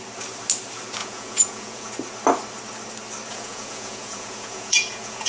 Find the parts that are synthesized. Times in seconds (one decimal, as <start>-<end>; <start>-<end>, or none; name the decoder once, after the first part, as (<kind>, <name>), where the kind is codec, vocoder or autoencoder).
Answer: 1.0-1.9 (vocoder, Vocos); 3.3-5.3